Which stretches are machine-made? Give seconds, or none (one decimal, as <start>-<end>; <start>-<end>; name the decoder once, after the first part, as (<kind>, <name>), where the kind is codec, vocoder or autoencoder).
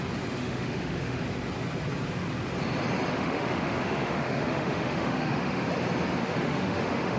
0.4-1.2 (autoencoder, DAC-VAE); 3.1-5.7; 6.2-7.2